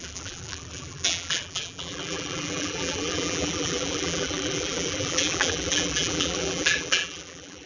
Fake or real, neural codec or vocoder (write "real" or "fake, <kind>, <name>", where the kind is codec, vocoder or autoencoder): fake, vocoder, BigVGAN v2